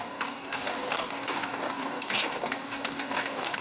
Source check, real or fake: fake